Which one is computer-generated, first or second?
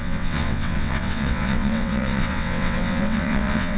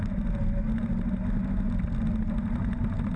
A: first